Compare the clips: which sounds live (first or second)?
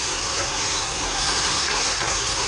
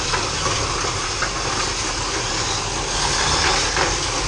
second